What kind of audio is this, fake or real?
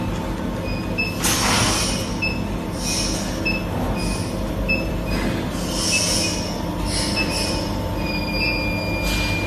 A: real